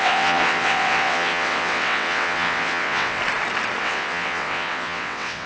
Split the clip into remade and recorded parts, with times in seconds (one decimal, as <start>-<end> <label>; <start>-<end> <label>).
0.0-3.2 remade; 3.2-3.8 recorded; 3.8-5.5 remade